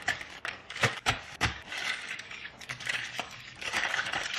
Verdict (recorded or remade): remade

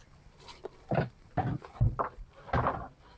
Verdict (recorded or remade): recorded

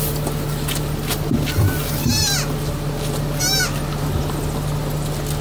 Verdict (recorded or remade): recorded